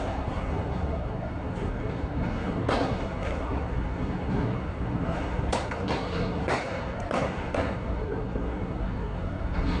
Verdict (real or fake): fake